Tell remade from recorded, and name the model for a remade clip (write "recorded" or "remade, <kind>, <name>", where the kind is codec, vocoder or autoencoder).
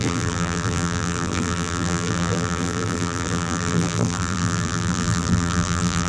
remade, vocoder, BigVGAN v2